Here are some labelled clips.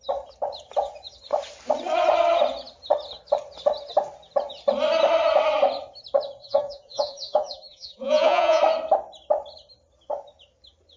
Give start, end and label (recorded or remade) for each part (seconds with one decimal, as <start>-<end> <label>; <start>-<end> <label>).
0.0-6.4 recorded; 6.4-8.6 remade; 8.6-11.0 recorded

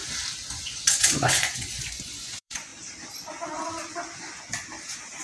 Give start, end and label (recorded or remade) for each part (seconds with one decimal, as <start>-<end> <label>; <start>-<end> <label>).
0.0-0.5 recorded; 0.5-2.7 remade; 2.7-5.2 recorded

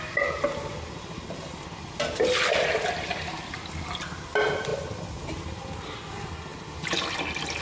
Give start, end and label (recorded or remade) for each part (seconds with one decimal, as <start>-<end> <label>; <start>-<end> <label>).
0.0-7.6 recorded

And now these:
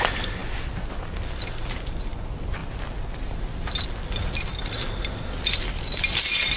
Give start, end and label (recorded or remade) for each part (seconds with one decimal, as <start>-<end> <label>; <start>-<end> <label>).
0.0-6.6 recorded

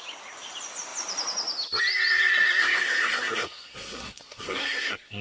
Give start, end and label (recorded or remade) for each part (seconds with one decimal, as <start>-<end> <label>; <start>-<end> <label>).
0.0-2.6 recorded; 2.6-5.2 remade